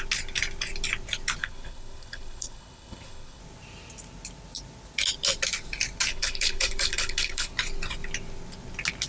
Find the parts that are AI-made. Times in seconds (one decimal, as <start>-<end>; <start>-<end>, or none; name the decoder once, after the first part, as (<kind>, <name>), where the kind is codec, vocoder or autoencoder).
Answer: 1.4-3.4 (codec, HILCodec); 6.1-7.5